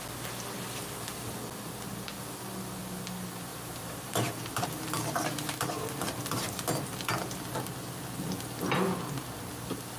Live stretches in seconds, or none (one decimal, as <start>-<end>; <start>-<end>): 0.0-3.5; 6.6-10.0